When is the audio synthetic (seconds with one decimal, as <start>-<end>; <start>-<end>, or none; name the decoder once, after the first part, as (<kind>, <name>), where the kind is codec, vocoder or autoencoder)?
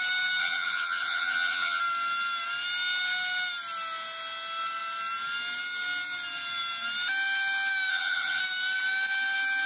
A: 0.4-1.8 (vocoder, HiFi-GAN); 7.9-8.4